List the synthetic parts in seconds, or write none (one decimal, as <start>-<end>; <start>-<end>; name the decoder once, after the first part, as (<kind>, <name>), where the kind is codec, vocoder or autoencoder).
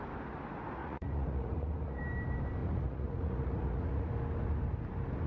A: 0.8-2.0 (vocoder, Vocos); 2.6-4.1